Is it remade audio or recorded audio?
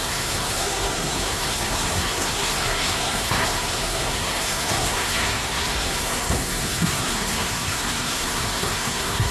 remade